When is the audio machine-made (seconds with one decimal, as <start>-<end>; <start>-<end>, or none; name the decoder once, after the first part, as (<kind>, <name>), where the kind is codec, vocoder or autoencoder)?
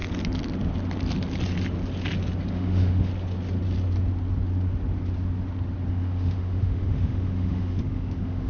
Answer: 2.5-3.1 (autoencoder, DAC-VAE); 5.9-8.5